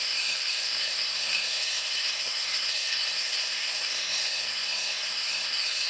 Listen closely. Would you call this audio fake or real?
fake